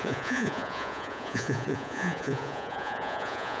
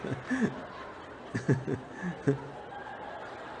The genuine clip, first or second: second